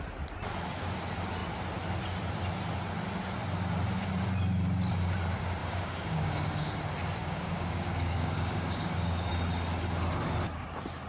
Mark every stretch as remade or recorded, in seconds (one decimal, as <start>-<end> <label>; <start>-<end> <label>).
0.0-5.6 recorded; 5.6-6.7 remade; 6.7-7.2 recorded; 7.2-9.3 remade; 9.3-11.1 recorded